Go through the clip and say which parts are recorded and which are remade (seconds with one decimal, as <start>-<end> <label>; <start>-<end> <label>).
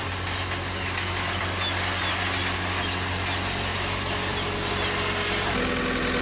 0.0-6.2 recorded